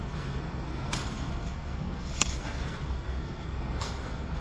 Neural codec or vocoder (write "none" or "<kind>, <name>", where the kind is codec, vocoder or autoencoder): codec, SNAC